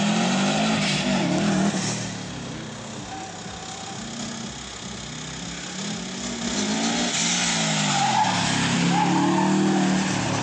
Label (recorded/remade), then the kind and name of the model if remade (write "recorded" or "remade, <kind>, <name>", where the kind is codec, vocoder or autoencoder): recorded